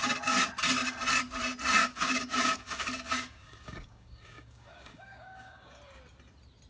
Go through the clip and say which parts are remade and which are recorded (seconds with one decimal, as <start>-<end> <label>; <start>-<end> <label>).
0.0-1.8 recorded; 1.8-5.8 remade; 5.8-6.7 recorded